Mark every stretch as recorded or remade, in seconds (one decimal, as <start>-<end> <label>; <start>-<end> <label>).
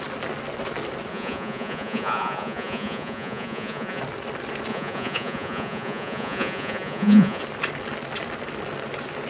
0.0-1.1 recorded; 1.1-4.0 remade; 4.0-4.7 recorded; 4.7-7.4 remade; 7.4-9.3 recorded